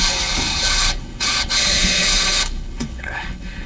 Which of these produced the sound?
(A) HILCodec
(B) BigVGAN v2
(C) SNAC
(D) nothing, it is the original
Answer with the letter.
A